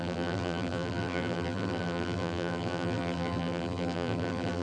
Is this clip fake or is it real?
fake